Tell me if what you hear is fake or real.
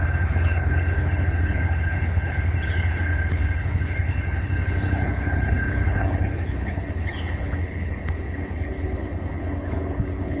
fake